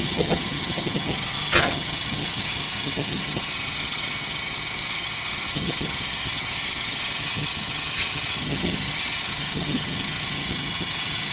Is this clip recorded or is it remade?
remade